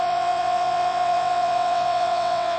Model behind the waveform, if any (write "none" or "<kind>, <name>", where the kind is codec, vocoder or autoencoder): vocoder, WaveNeXt